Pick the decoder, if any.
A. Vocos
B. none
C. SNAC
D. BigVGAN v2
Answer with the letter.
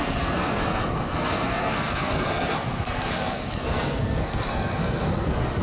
C